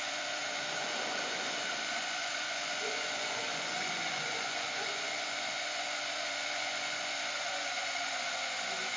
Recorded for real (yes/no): no